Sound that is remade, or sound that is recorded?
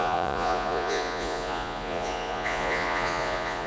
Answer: remade